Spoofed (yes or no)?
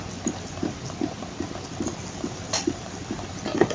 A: no